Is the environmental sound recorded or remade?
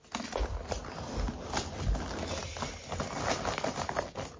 recorded